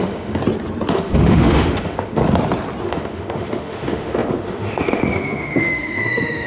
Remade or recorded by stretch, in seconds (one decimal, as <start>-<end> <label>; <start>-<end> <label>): 0.0-0.4 remade; 0.4-0.9 recorded; 0.9-2.2 remade; 2.2-2.8 recorded; 2.8-6.5 remade